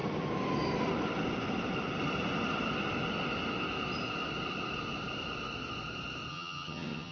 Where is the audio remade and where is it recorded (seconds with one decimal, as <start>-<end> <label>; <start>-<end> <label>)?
0.0-6.3 recorded; 6.3-7.1 remade